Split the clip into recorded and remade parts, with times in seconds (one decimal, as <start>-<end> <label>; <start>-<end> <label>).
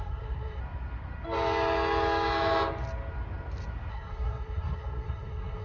0.0-0.6 remade; 0.6-3.9 recorded; 3.9-5.6 remade